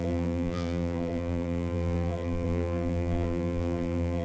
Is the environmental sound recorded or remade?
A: remade